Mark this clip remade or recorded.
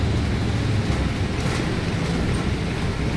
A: recorded